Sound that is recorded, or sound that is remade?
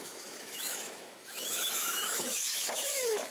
remade